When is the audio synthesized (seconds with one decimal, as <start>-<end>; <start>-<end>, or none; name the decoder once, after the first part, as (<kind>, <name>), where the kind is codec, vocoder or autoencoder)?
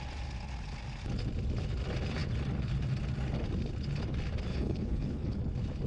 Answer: 4.5-5.4 (codec, HILCodec)